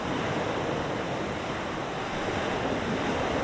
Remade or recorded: remade